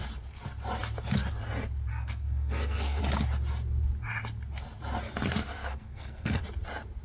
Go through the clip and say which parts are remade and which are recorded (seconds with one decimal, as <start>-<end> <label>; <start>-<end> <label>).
0.0-1.9 recorded; 1.9-3.0 remade; 3.0-5.4 recorded; 5.4-6.4 remade; 6.4-7.0 recorded